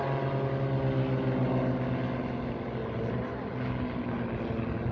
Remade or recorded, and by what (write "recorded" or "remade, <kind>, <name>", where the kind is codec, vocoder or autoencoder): recorded